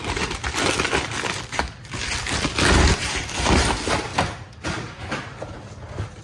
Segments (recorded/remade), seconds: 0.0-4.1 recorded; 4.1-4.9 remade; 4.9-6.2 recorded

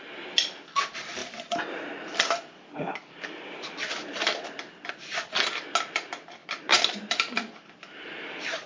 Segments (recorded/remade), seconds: 0.0-1.2 recorded; 1.2-4.9 remade; 4.9-6.4 recorded; 6.4-8.7 remade

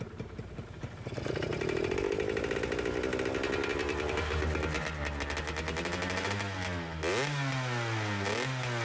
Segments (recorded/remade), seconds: 0.0-8.8 recorded

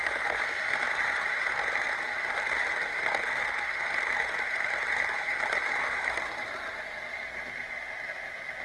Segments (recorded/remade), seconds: 0.0-8.6 recorded